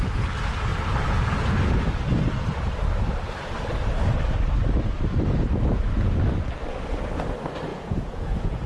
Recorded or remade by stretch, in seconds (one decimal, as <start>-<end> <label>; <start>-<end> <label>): 0.0-7.7 recorded; 7.7-8.7 remade